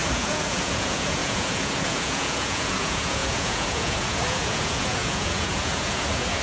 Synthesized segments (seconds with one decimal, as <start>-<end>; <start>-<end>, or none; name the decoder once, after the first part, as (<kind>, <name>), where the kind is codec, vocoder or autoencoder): 0.0-6.4 (vocoder, Vocos)